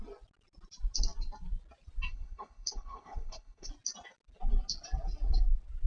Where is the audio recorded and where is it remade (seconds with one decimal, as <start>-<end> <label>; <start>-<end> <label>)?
0.0-2.1 recorded; 2.1-3.7 remade; 3.7-5.9 recorded